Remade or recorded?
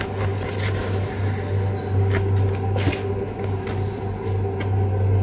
recorded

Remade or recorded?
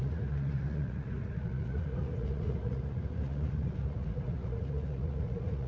remade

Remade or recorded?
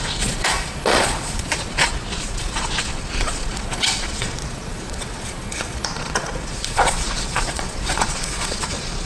remade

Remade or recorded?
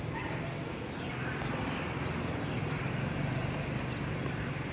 recorded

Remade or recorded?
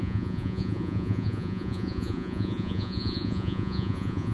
remade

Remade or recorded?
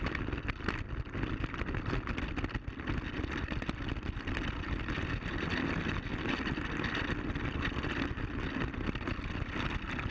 recorded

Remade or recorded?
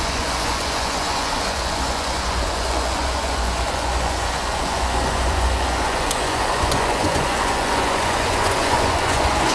remade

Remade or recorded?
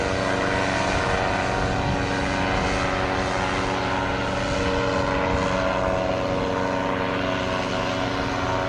recorded